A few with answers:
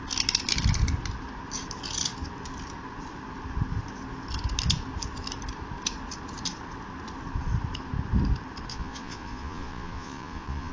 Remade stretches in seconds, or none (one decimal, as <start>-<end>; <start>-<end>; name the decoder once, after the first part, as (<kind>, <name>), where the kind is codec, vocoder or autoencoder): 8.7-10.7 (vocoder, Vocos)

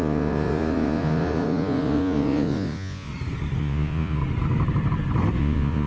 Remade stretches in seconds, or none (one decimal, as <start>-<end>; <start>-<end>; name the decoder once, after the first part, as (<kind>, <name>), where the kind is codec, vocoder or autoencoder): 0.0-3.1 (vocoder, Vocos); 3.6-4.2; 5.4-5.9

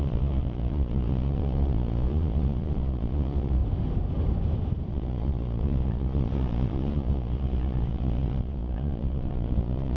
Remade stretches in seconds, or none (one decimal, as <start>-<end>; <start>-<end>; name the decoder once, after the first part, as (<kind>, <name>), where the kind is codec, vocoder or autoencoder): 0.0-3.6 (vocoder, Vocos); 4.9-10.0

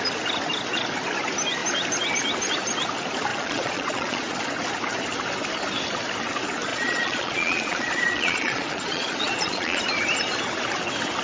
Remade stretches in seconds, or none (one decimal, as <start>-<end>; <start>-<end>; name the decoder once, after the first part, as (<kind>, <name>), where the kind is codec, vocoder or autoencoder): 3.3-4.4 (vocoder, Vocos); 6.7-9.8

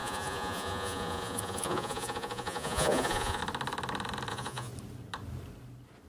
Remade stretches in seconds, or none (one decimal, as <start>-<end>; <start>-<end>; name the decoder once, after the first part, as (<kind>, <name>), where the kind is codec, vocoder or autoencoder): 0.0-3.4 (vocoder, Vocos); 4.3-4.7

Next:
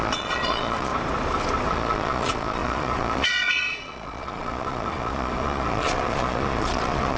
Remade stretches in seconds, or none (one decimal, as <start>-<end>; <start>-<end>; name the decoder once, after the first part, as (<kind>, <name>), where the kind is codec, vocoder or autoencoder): 0.0-0.9 (vocoder, Vocos); 1.7-7.2